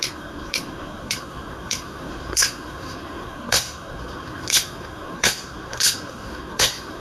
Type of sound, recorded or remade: remade